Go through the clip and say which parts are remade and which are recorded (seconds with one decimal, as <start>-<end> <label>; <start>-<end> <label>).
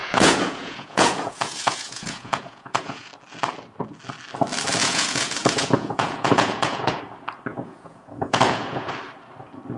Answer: 0.0-3.1 remade; 3.1-4.8 recorded; 4.8-7.0 remade; 7.0-7.5 recorded; 7.5-8.9 remade; 8.9-9.8 recorded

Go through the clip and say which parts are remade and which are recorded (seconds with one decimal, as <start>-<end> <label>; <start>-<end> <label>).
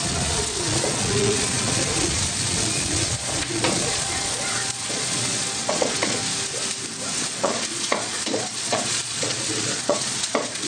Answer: 0.0-6.2 remade; 6.2-7.1 recorded; 7.1-10.7 remade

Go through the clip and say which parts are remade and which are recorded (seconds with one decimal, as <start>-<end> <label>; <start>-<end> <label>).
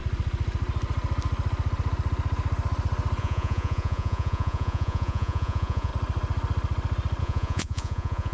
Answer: 0.0-3.2 recorded; 3.2-5.9 remade; 5.9-7.2 recorded; 7.2-8.3 remade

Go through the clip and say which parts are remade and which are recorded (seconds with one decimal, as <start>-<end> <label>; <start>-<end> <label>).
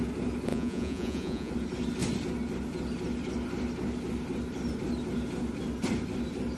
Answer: 0.0-0.5 recorded; 0.5-1.5 remade; 1.5-6.6 recorded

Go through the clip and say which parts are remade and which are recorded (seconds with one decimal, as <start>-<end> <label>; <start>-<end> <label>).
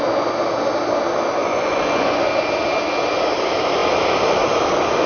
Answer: 0.0-1.4 recorded; 1.4-2.3 remade; 2.3-5.1 recorded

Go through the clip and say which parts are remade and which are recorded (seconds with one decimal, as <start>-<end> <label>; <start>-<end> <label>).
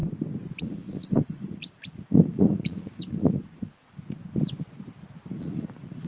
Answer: 0.0-0.6 recorded; 0.6-4.2 remade; 4.2-5.3 recorded; 5.3-6.1 remade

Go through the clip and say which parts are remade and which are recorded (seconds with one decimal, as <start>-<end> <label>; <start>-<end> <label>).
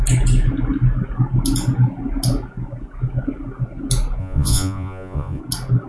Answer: 0.0-4.2 recorded; 4.2-5.4 remade; 5.4-5.9 recorded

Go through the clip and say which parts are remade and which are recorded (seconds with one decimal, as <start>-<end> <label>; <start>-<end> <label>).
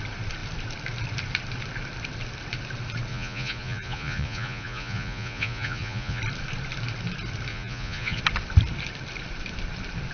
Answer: 0.0-3.1 recorded; 3.1-6.2 remade; 6.2-7.5 recorded; 7.5-8.2 remade; 8.2-10.1 recorded